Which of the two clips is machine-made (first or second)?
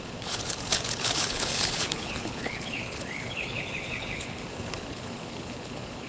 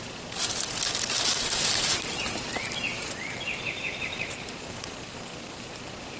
first